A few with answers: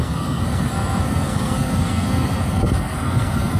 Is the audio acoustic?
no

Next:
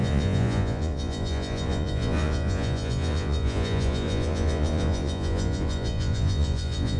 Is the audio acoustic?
no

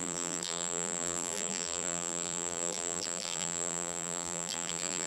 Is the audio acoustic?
no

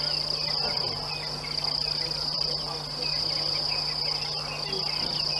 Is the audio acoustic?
yes